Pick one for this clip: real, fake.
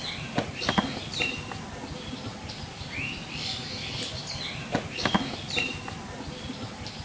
real